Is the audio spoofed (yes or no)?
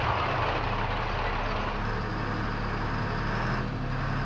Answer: no